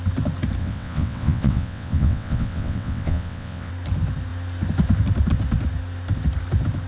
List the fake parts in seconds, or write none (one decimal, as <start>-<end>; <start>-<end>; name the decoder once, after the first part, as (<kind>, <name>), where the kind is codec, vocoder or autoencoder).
0.6-3.7 (vocoder, WaveNeXt)

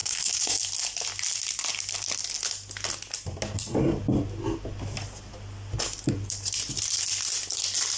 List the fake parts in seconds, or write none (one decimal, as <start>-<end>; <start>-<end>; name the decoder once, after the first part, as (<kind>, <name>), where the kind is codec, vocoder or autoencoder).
0.0-0.6 (codec, DAC)

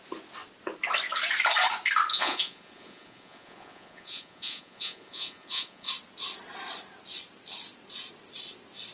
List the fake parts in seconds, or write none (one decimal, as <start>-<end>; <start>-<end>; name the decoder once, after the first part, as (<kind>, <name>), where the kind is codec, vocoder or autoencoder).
2.1-5.9 (vocoder, Vocos)

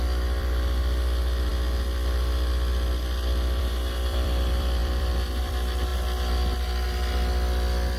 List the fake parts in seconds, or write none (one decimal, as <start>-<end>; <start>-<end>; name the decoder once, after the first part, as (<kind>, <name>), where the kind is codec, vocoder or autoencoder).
0.0-1.5 (vocoder, BigVGAN v2); 3.6-5.9

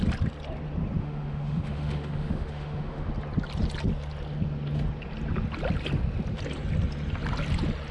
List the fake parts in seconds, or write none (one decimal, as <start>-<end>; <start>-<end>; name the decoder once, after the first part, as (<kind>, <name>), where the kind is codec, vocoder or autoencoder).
1.0-3.1 (autoencoder, DAC-VAE)